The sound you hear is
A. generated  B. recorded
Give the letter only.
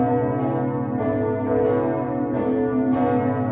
B